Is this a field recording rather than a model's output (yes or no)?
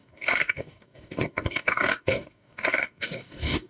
no